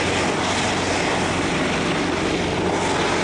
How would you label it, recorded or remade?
recorded